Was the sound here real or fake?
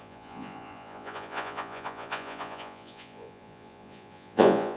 fake